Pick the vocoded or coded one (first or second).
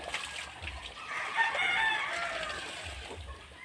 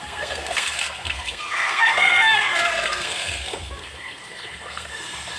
second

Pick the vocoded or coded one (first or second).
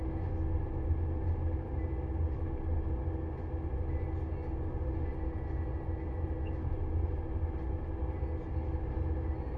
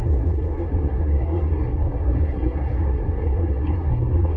second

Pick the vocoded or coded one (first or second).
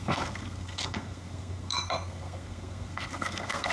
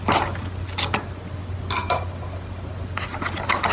first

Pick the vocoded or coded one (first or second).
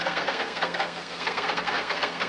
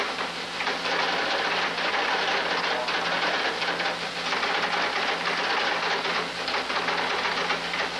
first